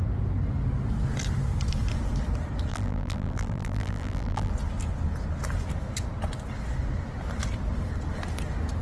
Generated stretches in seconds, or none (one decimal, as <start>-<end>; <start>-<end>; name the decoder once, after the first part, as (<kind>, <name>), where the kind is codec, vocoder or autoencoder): 2.7-4.5 (vocoder, BigVGAN v2)